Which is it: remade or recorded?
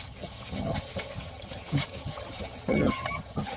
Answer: remade